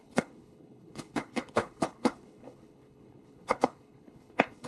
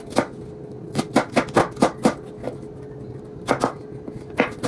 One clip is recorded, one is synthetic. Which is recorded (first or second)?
second